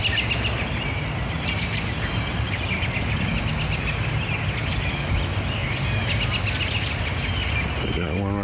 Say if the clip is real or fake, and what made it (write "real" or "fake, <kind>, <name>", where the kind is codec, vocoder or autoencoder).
real